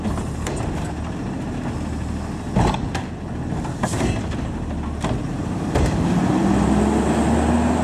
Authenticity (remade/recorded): recorded